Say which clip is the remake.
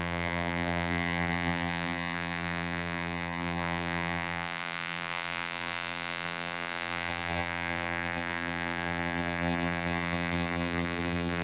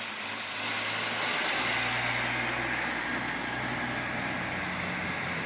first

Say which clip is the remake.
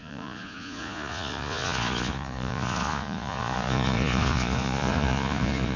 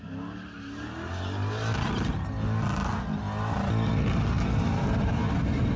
first